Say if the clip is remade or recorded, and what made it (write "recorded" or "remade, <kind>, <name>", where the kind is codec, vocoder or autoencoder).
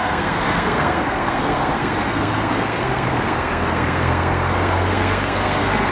remade, codec, SNAC